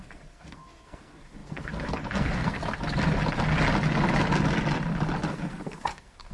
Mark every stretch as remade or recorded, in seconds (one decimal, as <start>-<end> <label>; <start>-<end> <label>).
0.0-2.6 remade; 2.6-5.3 recorded; 5.3-6.3 remade